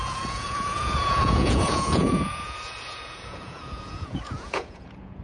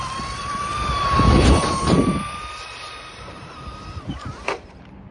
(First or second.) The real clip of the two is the second